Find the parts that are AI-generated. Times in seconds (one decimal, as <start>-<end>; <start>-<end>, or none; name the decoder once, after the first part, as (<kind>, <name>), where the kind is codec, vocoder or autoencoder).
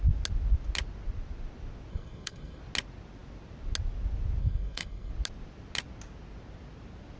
1.9-2.6 (codec, SNAC); 4.4-5.1